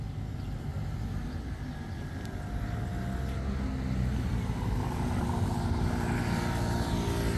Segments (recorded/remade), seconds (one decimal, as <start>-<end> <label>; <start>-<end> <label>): 0.0-7.4 recorded